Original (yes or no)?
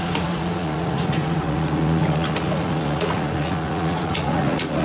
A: no